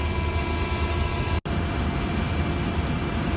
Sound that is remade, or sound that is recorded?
recorded